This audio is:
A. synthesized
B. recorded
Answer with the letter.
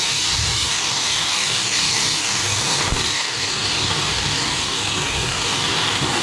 A